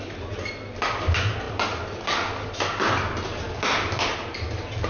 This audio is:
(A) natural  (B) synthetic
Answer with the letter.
A